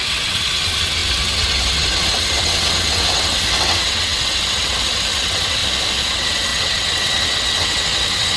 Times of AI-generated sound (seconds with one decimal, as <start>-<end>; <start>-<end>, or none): 0.0-5.6; 6.1-8.4